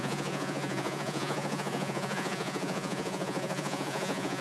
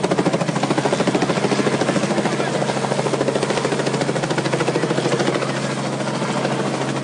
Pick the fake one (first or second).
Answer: first